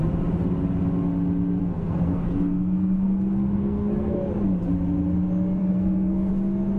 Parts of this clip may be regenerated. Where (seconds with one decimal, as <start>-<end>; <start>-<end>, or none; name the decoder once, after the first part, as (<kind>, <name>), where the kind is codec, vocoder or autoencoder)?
1.6-4.3 (codec, SNAC); 5.6-6.3